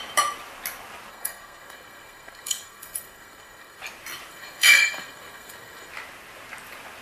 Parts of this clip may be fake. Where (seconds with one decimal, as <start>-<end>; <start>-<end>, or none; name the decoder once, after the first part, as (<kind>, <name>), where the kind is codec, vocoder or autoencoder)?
1.1-3.8 (codec, SNAC); 4.3-5.9